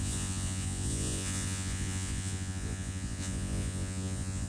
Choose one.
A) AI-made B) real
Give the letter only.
A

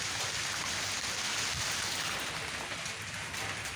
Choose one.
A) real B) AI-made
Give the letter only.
A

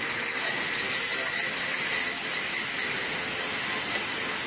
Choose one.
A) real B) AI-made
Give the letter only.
A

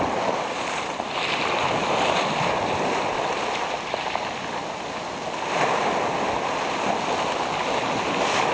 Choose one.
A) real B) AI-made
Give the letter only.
A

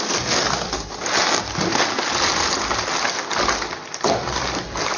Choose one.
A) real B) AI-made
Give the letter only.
A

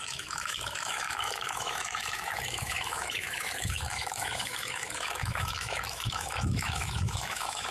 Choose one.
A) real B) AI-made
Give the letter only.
B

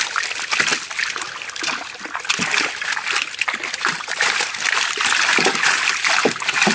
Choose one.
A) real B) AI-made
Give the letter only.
A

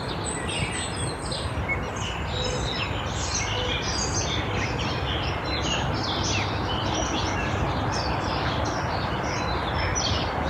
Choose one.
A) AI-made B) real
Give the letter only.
B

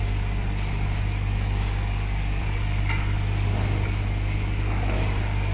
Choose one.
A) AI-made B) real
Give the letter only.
A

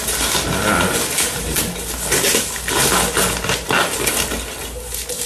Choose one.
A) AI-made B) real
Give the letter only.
B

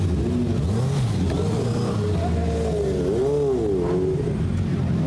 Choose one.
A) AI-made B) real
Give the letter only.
B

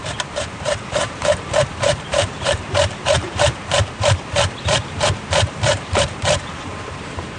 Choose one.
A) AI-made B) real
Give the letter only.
A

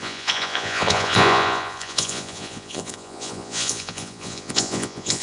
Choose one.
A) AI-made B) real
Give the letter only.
A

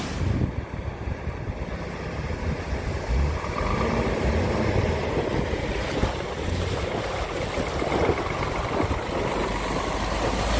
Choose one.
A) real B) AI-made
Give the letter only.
A